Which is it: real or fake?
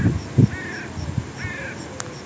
real